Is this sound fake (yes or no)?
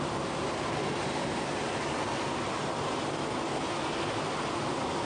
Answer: no